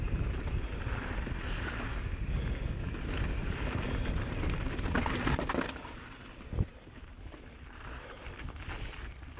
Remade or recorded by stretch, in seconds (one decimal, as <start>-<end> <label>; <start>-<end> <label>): 0.0-9.4 recorded